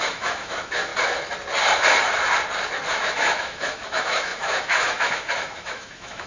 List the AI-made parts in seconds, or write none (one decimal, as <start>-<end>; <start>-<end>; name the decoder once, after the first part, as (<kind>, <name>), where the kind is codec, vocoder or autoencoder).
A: 0.0-0.9 (autoencoder, DAC-VAE); 2.9-6.3